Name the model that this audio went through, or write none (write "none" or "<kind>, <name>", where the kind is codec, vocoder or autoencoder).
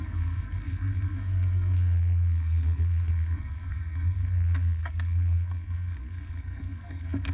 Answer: codec, SNAC